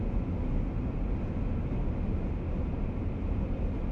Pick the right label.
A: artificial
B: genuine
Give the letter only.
B